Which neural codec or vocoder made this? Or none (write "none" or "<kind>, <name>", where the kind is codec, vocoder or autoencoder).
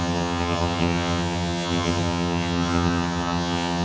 vocoder, HiFi-GAN